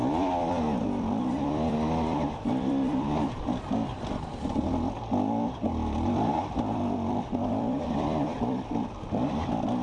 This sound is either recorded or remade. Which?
remade